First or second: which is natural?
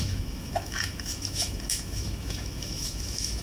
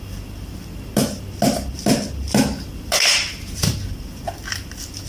second